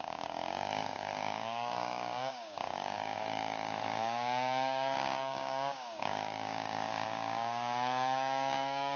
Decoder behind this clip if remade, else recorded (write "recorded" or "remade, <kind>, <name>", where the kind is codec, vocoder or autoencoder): remade, codec, DAC